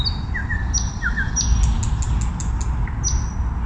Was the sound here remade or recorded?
recorded